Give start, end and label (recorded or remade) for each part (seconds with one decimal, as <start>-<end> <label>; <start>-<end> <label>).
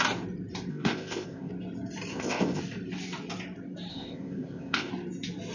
0.0-0.7 recorded; 0.7-1.5 remade; 1.5-2.1 recorded; 2.1-2.6 remade; 2.6-3.9 recorded; 3.9-4.9 remade; 4.9-5.5 recorded